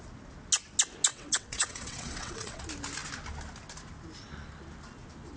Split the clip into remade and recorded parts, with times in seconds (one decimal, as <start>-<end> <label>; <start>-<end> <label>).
0.0-1.1 recorded; 1.1-2.6 remade; 2.6-5.4 recorded